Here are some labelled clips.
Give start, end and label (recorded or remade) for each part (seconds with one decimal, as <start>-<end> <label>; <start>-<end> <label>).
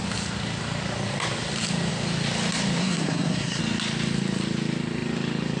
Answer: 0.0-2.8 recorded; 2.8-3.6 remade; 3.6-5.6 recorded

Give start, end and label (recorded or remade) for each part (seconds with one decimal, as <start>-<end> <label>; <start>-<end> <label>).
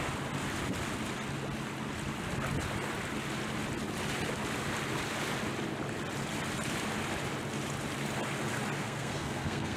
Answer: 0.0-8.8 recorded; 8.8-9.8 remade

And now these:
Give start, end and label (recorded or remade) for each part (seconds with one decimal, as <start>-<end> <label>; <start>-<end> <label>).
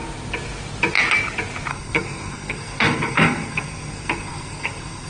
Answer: 0.0-1.7 recorded; 1.7-5.1 remade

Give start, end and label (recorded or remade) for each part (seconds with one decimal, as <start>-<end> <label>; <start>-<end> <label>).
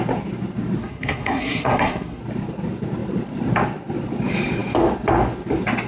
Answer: 0.0-0.8 recorded; 0.8-2.2 remade; 2.2-5.9 recorded